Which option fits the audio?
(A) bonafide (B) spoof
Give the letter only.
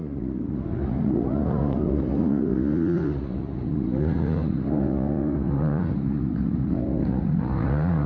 B